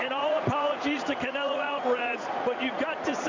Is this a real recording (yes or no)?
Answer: no